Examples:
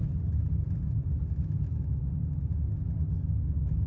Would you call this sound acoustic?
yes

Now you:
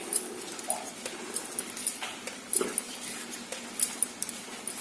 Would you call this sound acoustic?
yes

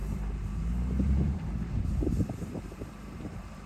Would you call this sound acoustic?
no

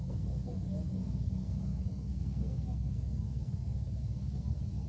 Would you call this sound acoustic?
no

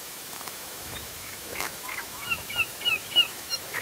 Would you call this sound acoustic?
no